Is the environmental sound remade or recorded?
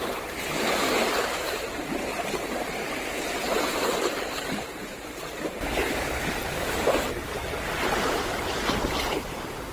remade